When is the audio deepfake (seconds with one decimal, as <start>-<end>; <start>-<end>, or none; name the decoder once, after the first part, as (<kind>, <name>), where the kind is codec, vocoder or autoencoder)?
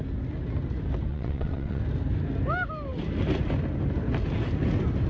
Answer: 1.1-1.8 (vocoder, WaveNeXt)